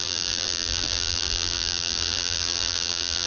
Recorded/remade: remade